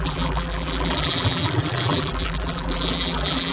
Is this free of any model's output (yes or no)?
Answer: no